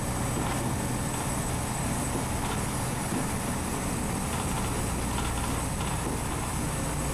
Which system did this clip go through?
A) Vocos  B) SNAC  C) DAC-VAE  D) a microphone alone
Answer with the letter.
D